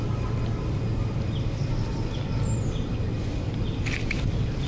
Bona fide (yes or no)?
yes